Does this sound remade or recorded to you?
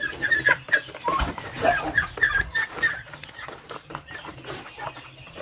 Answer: recorded